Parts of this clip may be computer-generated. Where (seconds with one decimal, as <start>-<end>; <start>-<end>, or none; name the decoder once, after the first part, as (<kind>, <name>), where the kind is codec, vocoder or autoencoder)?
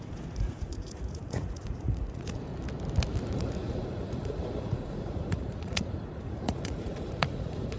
0.0-2.5 (vocoder, Vocos); 3.3-7.8